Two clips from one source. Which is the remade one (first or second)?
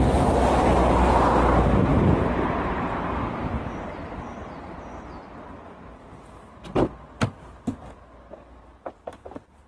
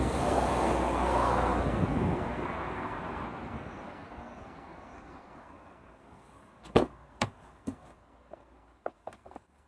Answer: second